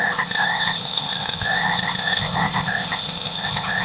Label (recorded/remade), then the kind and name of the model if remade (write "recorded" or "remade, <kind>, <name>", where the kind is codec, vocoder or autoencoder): remade, codec, ZipCodec